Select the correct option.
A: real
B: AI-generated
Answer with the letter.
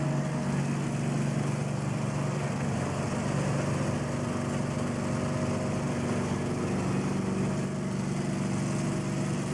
A